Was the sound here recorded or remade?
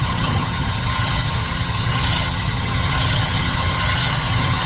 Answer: remade